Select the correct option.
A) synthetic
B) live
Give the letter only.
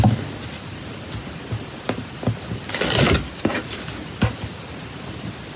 B